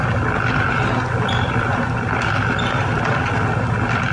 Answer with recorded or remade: recorded